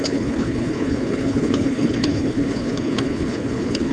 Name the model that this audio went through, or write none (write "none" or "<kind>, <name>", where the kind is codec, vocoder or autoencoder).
codec, HILCodec